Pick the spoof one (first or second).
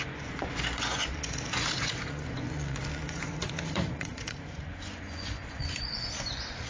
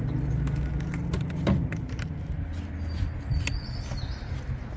first